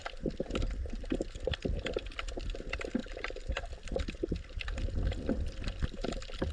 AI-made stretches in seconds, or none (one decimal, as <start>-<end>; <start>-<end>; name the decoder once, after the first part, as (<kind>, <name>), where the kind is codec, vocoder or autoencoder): 3.0-4.0 (vocoder, BigVGAN v2)